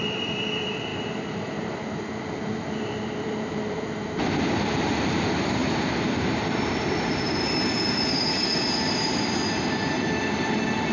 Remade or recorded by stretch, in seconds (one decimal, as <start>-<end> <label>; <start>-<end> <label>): 0.0-10.9 remade